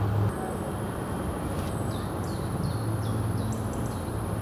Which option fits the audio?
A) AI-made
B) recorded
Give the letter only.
B